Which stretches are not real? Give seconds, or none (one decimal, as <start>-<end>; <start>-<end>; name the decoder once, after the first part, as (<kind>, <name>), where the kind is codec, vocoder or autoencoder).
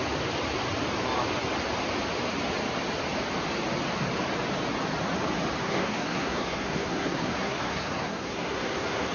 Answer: 5.6-9.1 (codec, SNAC)